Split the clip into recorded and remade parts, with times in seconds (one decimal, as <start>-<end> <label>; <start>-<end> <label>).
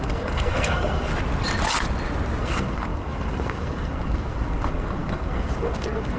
0.0-1.1 remade; 1.1-2.4 recorded; 2.4-6.2 remade